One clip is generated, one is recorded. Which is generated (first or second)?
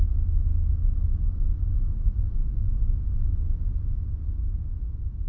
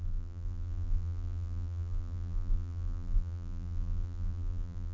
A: second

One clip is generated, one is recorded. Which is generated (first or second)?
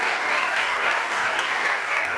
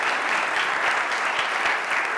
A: first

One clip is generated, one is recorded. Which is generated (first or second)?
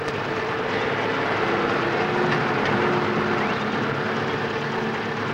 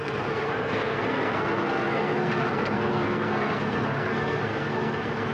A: second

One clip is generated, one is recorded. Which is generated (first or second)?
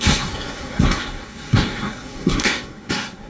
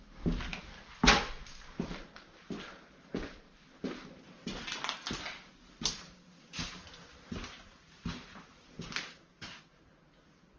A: first